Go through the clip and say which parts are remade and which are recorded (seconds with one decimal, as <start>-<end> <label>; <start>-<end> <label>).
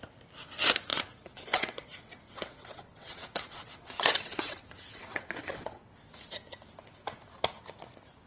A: 0.0-0.9 recorded; 0.9-5.9 remade; 5.9-8.3 recorded